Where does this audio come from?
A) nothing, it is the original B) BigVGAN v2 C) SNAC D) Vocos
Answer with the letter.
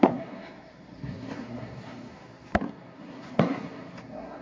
C